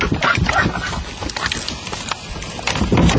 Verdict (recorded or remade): recorded